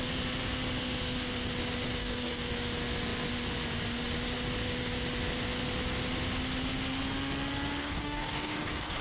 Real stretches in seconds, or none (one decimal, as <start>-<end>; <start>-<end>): 0.0-2.0; 2.5-7.8